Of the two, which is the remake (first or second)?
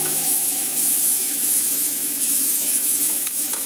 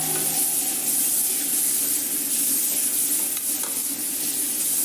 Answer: first